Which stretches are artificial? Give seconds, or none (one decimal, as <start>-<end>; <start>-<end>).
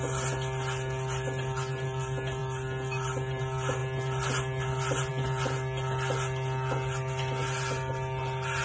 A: none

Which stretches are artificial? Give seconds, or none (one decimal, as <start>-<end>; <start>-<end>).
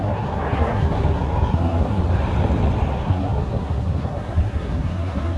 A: 0.0-2.0; 2.9-5.4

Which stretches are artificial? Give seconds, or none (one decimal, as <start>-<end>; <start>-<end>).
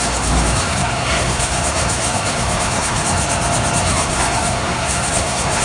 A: 0.0-3.2; 3.8-5.6